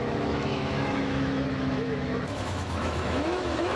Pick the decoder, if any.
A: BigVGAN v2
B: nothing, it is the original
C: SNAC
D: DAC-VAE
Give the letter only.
D